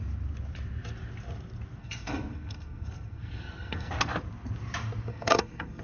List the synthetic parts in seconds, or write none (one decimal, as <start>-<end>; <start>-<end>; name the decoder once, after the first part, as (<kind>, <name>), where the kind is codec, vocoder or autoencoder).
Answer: 1.8-3.9 (codec, SNAC); 5.1-5.8